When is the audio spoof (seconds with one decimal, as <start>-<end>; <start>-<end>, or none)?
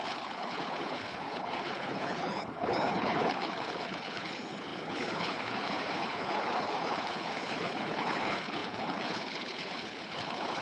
0.0-10.6